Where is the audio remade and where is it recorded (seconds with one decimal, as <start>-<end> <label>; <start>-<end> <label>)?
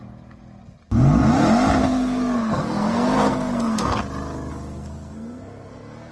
0.0-1.8 recorded; 1.8-4.0 remade; 4.0-4.5 recorded; 4.5-6.1 remade